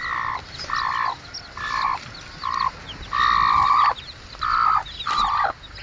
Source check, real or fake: real